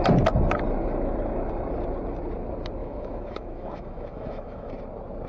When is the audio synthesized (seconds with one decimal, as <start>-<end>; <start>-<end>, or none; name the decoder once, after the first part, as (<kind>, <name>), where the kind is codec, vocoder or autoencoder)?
2.8-4.7 (autoencoder, DAC-VAE)